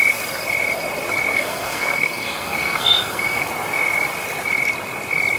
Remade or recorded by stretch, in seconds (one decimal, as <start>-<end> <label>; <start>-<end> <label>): 0.0-1.3 recorded; 1.3-3.5 remade; 3.5-5.4 recorded